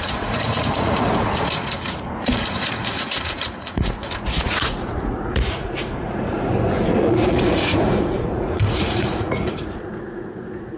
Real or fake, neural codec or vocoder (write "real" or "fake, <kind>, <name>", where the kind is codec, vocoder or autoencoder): fake, vocoder, Vocos